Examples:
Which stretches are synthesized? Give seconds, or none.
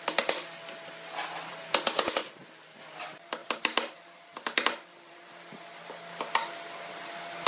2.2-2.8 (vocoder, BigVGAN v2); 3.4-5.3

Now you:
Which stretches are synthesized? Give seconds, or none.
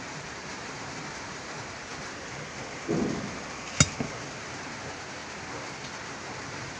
0.0-1.9 (vocoder, BigVGAN v2); 4.4-5.2; 6.1-6.8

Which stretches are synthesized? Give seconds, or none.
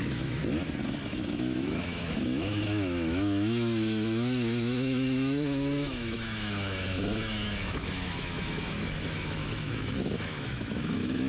0.0-0.4 (autoencoder, DAC-VAE); 1.1-11.3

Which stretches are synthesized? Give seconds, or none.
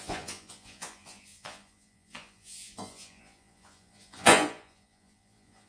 0.0-5.7 (vocoder, Vocos)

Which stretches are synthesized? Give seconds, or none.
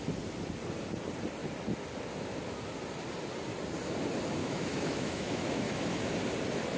4.4-6.1 (autoencoder, DAC-VAE)